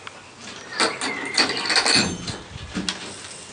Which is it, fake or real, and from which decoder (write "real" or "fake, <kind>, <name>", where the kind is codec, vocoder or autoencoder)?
real